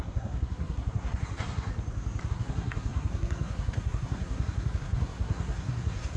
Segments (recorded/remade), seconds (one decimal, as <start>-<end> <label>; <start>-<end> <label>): 0.0-1.7 remade; 1.7-2.3 recorded; 2.3-6.2 remade